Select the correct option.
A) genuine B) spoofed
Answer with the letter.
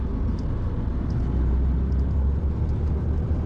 A